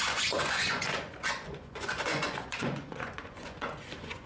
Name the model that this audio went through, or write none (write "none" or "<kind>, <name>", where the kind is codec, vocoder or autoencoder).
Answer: vocoder, Vocos